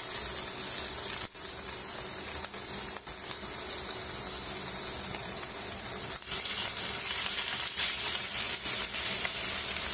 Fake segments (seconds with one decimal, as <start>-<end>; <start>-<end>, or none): 5.1-9.5